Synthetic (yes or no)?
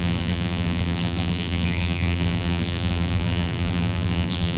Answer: yes